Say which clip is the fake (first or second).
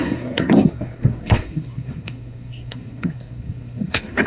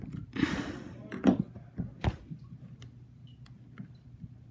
first